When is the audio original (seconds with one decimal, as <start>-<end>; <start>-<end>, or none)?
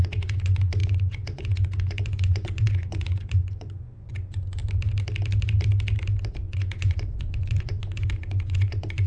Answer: 4.6-6.3